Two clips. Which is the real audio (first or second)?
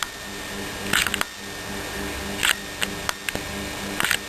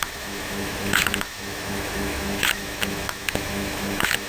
first